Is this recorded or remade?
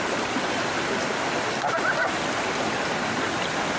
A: recorded